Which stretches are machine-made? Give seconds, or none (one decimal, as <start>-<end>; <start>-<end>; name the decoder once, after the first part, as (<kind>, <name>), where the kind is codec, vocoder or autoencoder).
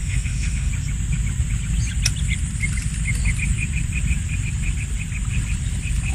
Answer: 0.0-0.7 (autoencoder, DAC-VAE)